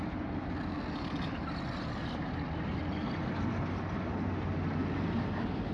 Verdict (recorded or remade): recorded